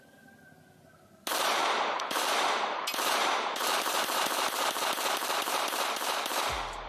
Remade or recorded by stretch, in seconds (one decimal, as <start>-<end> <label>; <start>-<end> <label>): 0.0-1.6 recorded; 1.6-4.8 remade; 4.8-6.9 recorded